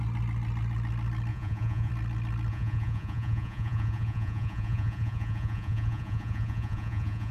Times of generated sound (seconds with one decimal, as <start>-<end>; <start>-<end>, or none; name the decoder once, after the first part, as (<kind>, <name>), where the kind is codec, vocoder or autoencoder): 1.3-1.9 (vocoder, Vocos); 2.5-7.3